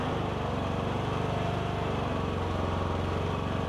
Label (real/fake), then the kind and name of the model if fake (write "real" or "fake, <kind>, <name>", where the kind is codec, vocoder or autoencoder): fake, vocoder, BigVGAN v2